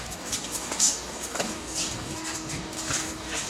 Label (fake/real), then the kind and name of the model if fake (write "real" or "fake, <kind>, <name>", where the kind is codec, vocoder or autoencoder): fake, codec, DAC